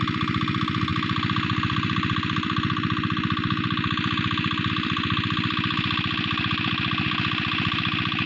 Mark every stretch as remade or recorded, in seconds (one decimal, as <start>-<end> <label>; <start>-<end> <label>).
0.0-8.3 recorded